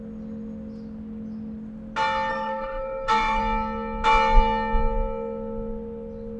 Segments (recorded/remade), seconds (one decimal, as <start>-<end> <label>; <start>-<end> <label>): 0.0-2.3 recorded; 2.3-3.4 remade; 3.4-6.4 recorded